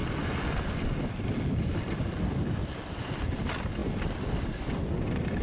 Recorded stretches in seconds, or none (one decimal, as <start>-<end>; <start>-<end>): 3.2-3.8; 4.3-5.4